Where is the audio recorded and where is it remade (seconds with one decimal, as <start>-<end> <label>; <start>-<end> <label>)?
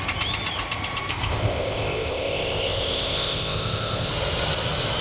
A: 0.0-1.1 recorded; 1.1-4.1 remade; 4.1-5.0 recorded